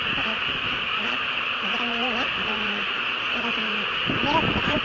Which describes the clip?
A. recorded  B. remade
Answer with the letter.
B